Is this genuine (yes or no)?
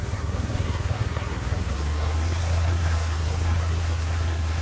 no